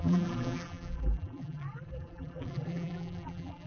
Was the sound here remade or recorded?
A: remade